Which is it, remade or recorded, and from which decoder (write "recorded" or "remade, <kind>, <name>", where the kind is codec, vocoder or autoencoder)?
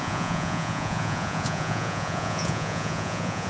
remade, vocoder, Vocos